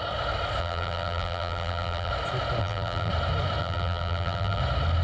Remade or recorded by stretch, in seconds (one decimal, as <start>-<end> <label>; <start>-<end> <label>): 0.0-0.6 recorded; 0.6-2.1 remade; 2.1-2.6 recorded; 2.6-3.1 remade; 3.1-3.6 recorded; 3.6-4.6 remade; 4.6-5.0 recorded